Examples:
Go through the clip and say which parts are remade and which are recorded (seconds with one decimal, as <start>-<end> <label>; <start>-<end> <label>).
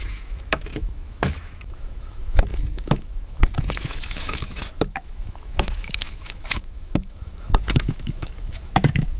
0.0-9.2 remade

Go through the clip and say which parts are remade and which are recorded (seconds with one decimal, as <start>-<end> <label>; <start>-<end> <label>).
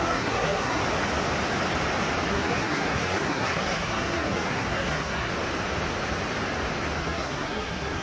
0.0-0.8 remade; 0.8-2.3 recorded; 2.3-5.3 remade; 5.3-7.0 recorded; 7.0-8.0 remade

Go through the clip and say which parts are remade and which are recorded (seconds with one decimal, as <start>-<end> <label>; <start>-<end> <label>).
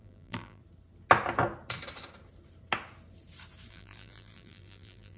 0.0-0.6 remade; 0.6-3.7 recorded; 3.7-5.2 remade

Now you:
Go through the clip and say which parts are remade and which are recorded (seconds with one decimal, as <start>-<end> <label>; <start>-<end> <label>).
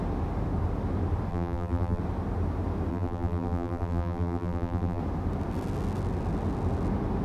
0.0-1.3 recorded; 1.3-2.0 remade; 2.0-2.9 recorded; 2.9-5.0 remade; 5.0-7.2 recorded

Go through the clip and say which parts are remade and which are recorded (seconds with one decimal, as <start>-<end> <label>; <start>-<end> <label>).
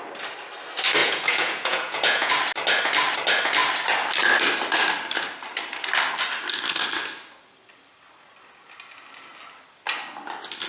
0.0-1.0 recorded; 1.0-2.3 remade; 2.3-10.7 recorded